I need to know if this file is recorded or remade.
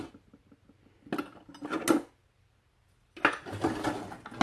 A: recorded